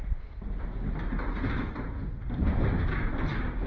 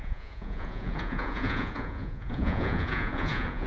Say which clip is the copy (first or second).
second